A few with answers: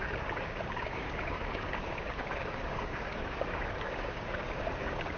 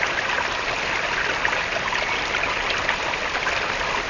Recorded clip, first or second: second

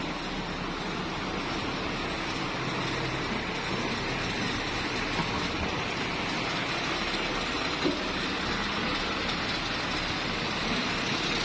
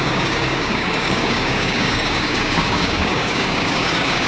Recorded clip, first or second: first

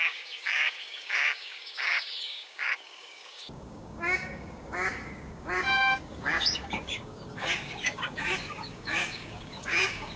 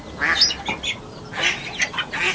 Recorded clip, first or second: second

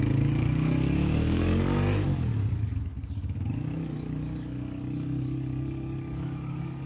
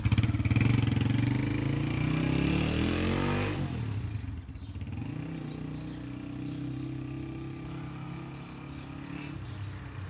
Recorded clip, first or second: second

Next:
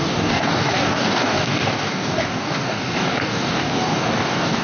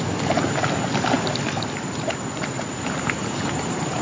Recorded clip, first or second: second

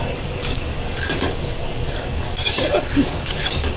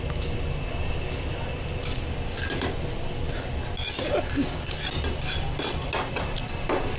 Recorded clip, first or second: second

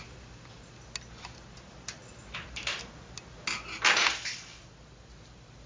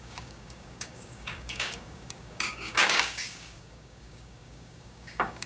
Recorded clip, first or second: first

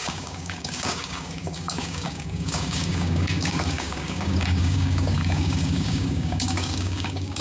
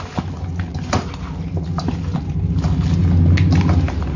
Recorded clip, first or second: second